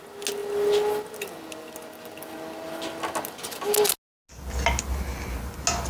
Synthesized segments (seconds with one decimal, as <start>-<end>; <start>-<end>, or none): none